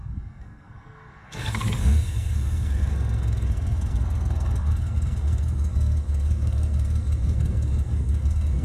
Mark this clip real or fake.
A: fake